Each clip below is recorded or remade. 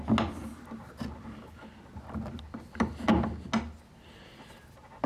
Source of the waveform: recorded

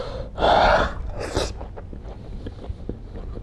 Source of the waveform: recorded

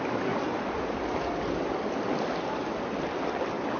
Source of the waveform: recorded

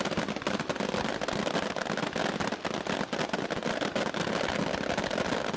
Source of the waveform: recorded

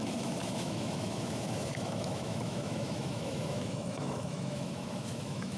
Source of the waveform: remade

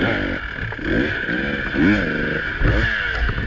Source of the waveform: recorded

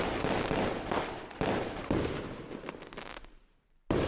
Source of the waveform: recorded